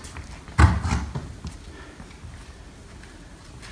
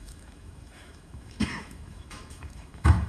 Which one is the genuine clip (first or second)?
first